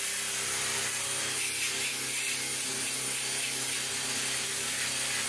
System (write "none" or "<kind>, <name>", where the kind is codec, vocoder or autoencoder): none